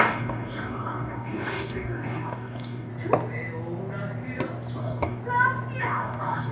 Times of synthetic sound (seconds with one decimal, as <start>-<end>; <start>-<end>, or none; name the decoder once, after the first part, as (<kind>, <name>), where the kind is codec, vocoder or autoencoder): 0.0-2.9 (codec, DAC); 4.8-5.2; 5.8-6.5